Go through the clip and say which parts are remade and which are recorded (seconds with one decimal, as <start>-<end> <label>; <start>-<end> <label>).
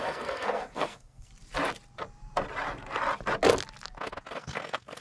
0.0-1.3 remade; 1.3-4.3 recorded; 4.3-5.0 remade